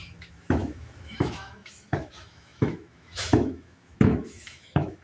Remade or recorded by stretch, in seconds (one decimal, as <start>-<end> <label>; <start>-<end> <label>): 0.0-5.0 remade